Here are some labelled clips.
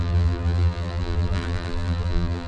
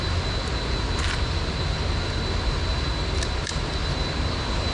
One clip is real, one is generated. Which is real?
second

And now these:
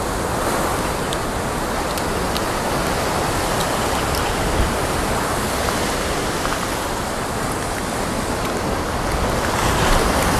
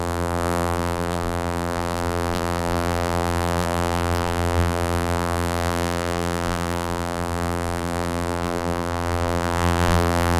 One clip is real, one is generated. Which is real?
first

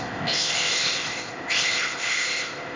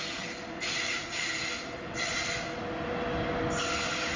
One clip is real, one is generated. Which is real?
second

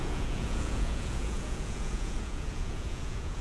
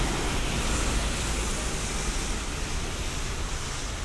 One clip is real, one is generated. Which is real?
second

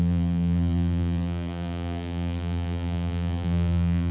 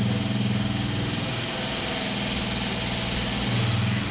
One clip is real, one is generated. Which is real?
second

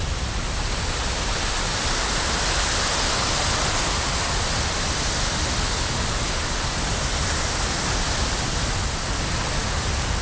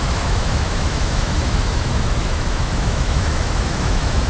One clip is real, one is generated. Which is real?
first